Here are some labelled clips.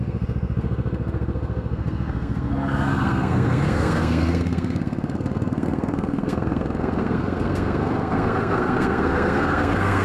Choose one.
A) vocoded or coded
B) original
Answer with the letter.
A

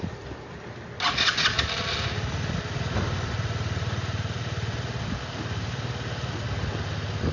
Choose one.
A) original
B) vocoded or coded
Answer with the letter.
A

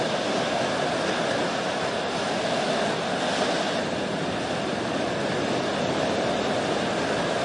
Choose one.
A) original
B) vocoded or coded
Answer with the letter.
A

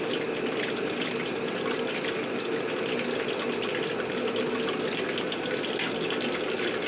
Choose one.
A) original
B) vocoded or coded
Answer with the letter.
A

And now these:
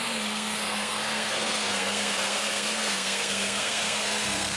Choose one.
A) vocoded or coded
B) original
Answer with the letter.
A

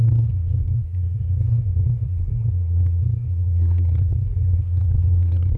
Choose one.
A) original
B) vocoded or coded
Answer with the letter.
B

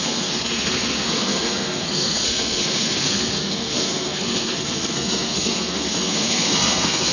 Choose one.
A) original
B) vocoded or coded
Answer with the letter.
B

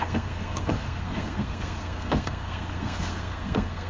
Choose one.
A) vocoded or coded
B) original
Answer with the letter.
A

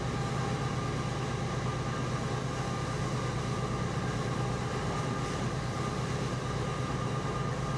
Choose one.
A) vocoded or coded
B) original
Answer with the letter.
B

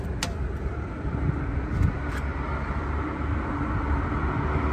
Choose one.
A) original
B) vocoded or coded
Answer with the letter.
A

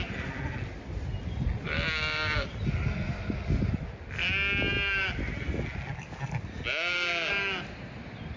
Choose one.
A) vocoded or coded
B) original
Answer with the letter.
B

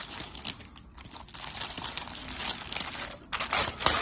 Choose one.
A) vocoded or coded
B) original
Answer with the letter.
B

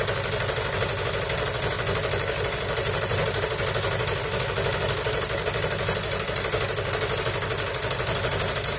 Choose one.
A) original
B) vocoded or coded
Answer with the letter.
A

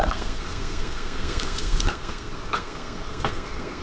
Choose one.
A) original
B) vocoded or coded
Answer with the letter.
B